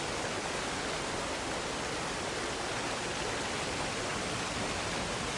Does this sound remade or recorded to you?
recorded